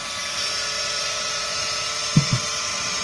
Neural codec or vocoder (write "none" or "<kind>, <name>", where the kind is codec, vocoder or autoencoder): vocoder, BigVGAN v2